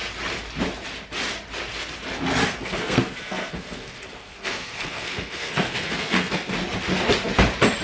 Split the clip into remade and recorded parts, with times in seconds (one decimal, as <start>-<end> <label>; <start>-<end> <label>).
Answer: 0.0-2.4 recorded; 2.4-6.5 remade; 6.5-7.8 recorded